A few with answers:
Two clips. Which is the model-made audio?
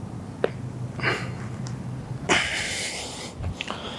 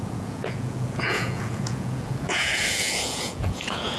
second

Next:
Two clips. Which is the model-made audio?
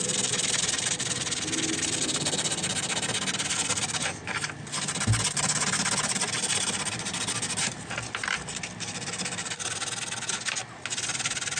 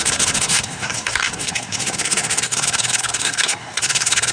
second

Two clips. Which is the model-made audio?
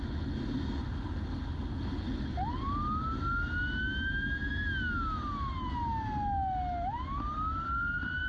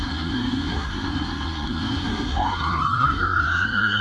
second